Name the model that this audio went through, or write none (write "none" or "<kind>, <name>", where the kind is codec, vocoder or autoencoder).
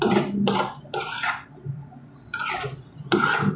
vocoder, BigVGAN v2